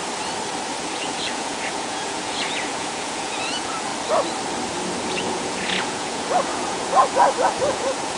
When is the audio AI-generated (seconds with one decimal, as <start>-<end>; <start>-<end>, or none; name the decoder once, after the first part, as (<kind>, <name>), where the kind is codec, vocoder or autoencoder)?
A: 0.8-3.9 (vocoder, Vocos); 5.1-8.2